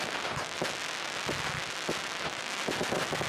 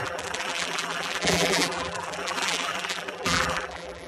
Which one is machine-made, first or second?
second